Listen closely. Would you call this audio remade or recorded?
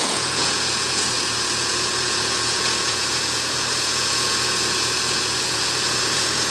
remade